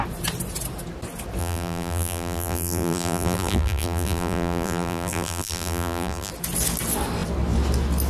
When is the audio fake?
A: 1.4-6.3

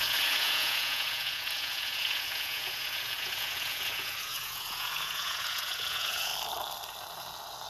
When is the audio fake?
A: 0.0-6.3

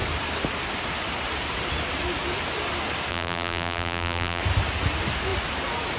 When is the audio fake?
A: 3.1-4.4

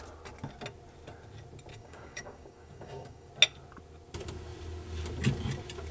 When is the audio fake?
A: 1.7-3.3

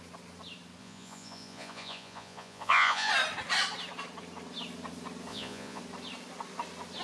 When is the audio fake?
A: 0.8-3.1; 5.3-5.8

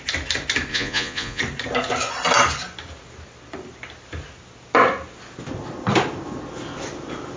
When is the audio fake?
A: 0.7-1.4

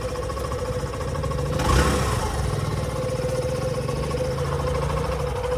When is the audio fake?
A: none

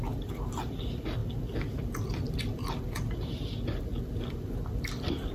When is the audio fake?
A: none